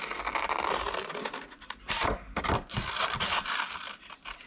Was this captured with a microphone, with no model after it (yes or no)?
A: yes